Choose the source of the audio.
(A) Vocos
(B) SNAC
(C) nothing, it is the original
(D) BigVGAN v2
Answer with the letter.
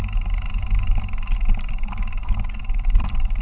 C